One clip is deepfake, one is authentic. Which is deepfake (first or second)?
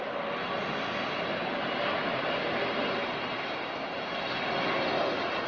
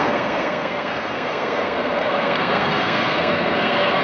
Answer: second